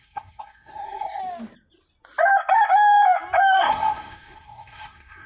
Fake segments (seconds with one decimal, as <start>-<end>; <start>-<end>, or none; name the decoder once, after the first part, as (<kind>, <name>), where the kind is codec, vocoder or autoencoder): 0.0-1.2 (codec, SNAC); 3.6-5.3